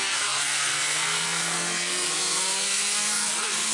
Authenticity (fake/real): fake